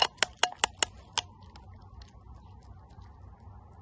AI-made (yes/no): no